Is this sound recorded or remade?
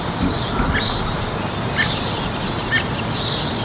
recorded